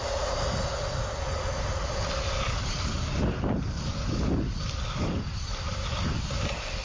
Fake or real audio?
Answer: real